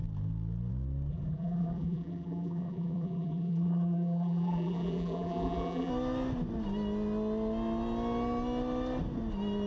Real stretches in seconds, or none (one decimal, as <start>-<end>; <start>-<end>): 0.0-1.1; 5.9-9.7